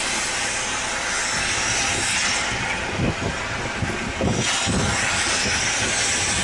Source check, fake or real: real